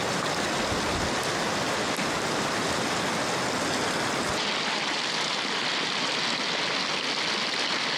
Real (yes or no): yes